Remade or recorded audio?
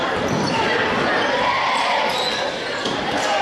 remade